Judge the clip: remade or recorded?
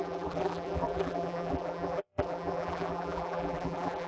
remade